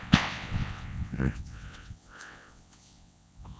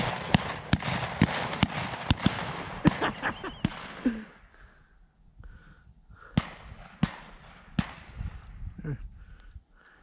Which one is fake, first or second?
first